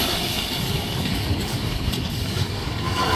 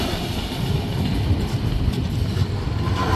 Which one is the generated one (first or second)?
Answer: first